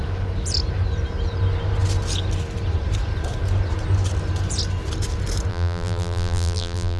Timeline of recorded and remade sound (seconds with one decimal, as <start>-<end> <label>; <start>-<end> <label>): 0.0-5.5 recorded; 5.5-7.0 remade